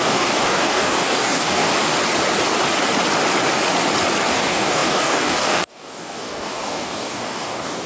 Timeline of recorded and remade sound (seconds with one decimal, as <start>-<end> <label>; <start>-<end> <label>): 0.0-1.7 remade; 1.7-4.3 recorded; 4.3-7.9 remade